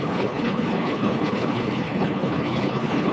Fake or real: fake